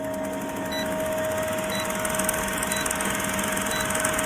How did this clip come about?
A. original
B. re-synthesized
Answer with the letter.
A